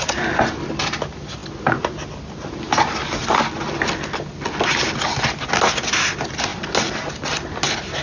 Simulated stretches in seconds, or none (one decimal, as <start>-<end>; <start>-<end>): none